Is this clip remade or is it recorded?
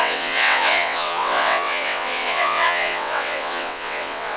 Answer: remade